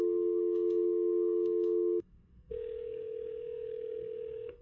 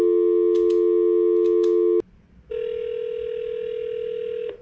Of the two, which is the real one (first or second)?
second